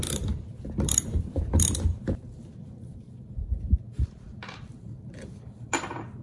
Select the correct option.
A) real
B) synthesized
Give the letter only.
B